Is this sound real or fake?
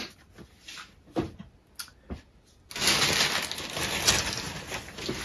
real